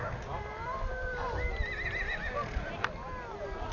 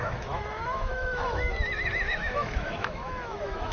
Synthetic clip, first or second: second